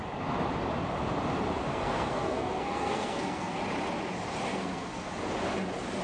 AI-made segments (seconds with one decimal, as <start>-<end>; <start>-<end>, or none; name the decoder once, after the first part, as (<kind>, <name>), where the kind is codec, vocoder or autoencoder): 1.7-3.6 (codec, SNAC); 4.5-5.1